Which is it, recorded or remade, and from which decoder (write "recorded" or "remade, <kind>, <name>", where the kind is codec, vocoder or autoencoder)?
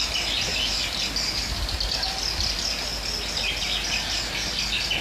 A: recorded